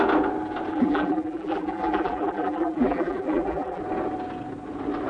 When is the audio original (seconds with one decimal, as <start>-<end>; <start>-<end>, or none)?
0.0-0.7; 3.8-5.1